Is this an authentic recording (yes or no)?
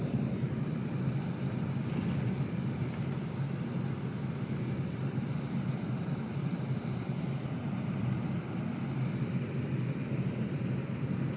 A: yes